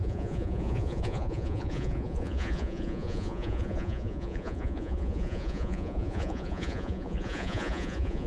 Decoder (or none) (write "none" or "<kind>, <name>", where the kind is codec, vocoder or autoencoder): vocoder, Vocos